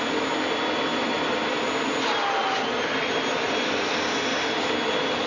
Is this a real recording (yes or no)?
yes